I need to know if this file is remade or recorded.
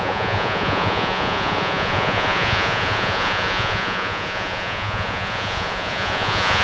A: remade